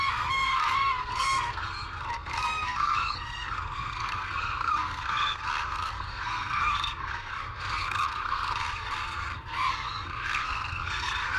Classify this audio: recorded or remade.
remade